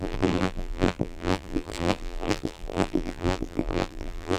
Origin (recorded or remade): remade